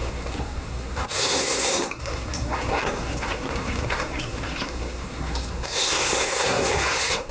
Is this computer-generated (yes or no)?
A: yes